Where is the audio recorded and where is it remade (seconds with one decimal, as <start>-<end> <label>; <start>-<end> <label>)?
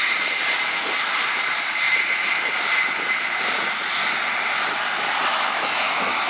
0.0-5.3 recorded; 5.3-6.3 remade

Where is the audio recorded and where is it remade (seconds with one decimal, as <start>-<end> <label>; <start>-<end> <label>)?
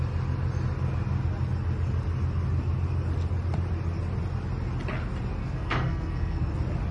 0.0-5.4 recorded; 5.4-6.5 remade; 6.5-6.9 recorded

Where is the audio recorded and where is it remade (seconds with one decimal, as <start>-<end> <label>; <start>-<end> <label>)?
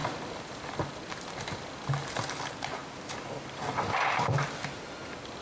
0.0-5.4 recorded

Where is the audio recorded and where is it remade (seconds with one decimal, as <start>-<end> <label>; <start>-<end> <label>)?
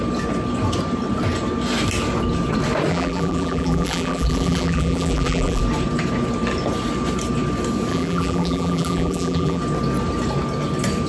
0.0-2.9 recorded; 2.9-5.6 remade; 5.6-7.9 recorded; 7.9-9.6 remade; 9.6-11.1 recorded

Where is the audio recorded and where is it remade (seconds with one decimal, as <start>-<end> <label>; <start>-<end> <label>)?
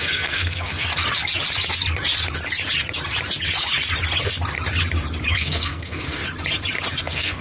0.0-0.9 remade; 0.9-5.3 recorded; 5.3-6.2 remade; 6.2-7.0 recorded; 7.0-7.4 remade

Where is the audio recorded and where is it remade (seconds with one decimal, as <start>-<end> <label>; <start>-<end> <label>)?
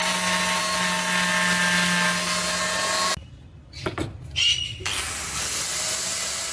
0.0-6.5 recorded